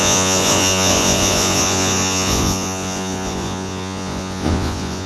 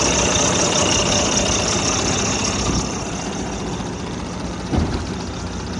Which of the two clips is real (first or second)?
second